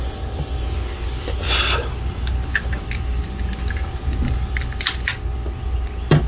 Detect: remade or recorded recorded